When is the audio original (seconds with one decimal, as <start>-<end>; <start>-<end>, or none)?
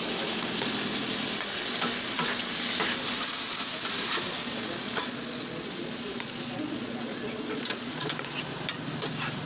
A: 0.0-4.4; 8.4-9.5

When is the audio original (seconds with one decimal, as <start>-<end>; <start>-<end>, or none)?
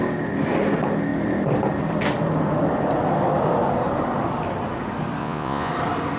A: 0.0-5.2; 5.7-6.2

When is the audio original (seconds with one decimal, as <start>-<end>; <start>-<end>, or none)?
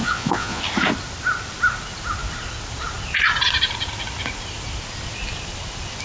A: 0.6-6.0